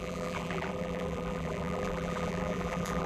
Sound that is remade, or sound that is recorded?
remade